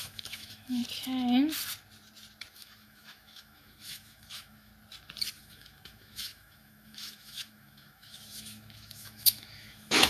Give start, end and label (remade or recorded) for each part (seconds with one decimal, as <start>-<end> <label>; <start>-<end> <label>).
0.0-0.8 remade; 0.8-2.5 recorded; 2.5-4.7 remade; 4.7-5.4 recorded; 5.4-10.1 remade